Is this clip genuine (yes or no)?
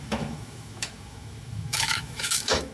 no